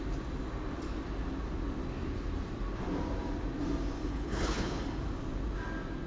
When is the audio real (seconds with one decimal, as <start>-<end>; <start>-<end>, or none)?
0.0-4.1; 4.8-6.1